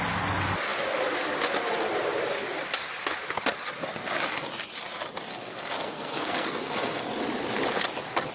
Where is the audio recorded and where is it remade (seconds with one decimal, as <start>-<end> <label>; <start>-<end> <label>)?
0.0-5.3 recorded; 5.3-7.0 remade; 7.0-8.3 recorded

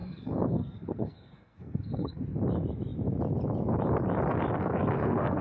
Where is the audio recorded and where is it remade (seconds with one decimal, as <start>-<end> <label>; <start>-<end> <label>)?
0.0-2.2 remade; 2.2-4.6 recorded; 4.6-5.4 remade